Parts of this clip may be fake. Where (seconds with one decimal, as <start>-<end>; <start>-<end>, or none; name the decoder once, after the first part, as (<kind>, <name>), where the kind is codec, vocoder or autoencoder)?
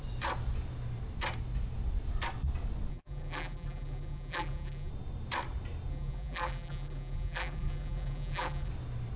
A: 2.9-4.9 (vocoder, BigVGAN v2); 5.9-8.7